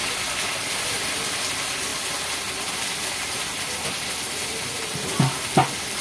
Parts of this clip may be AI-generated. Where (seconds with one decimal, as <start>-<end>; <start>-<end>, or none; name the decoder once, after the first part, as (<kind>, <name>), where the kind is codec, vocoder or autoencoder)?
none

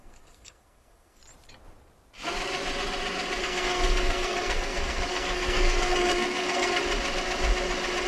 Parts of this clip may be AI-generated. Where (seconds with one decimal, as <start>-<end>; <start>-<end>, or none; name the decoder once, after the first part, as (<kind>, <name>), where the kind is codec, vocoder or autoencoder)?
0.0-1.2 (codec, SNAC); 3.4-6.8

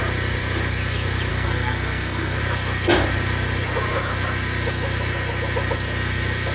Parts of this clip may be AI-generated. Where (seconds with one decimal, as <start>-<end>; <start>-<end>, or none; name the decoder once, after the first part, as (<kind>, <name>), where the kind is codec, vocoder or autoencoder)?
1.3-2.4 (codec, SNAC)

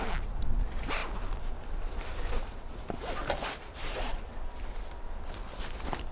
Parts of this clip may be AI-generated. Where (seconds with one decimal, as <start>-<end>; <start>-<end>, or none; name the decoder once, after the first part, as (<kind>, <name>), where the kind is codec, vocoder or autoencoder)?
none